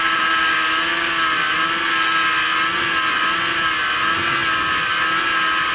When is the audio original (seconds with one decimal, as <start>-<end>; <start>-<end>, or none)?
0.0-5.7